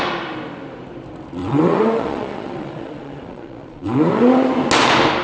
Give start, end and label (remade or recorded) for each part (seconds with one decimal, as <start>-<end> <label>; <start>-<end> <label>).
0.0-1.4 recorded; 1.4-4.5 remade; 4.5-5.2 recorded